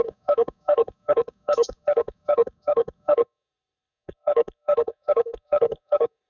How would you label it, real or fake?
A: fake